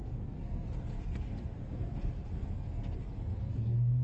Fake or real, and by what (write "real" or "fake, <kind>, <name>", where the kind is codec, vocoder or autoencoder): fake, codec, SNAC